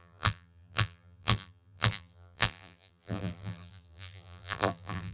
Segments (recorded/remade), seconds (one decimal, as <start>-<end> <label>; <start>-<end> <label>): 0.0-5.1 remade